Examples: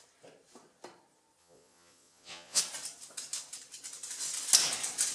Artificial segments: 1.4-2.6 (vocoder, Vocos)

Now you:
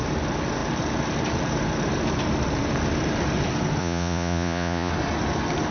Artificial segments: 3.8-4.9 (vocoder, Vocos)

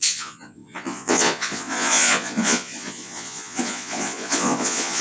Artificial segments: 0.0-5.0 (vocoder, Vocos)

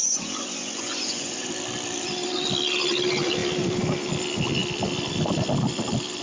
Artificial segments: 0.0-1.5 (vocoder, Vocos)

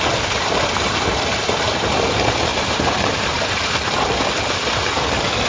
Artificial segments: none